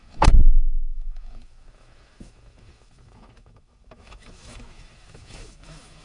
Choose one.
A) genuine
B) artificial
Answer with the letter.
B